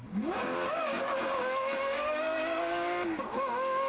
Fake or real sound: fake